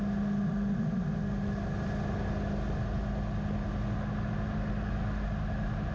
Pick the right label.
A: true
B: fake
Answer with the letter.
A